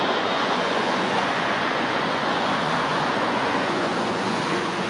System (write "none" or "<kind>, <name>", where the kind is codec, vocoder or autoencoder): vocoder, Vocos